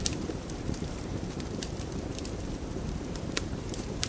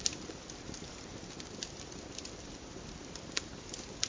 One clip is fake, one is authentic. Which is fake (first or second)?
first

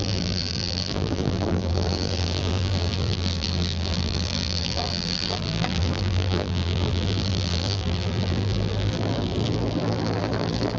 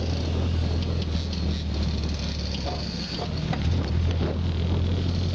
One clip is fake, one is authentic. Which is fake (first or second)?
first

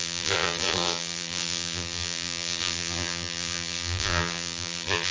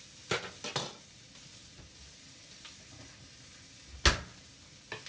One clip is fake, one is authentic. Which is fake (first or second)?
first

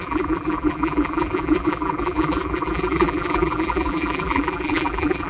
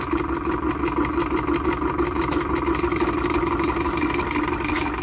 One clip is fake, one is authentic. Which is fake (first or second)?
first